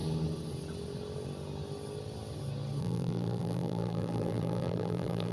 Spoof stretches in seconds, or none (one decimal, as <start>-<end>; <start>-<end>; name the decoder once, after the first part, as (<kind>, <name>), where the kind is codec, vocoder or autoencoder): 2.8-5.3 (vocoder, BigVGAN v2)